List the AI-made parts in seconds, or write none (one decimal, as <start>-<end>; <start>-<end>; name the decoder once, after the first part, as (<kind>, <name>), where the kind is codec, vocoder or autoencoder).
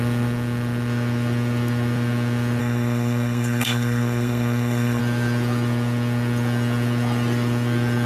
2.6-5.0 (codec, SNAC)